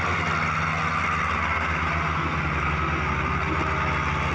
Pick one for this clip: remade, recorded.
recorded